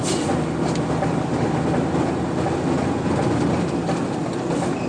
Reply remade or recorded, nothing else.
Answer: recorded